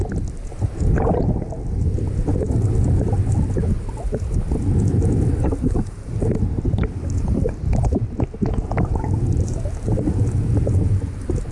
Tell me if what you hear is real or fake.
real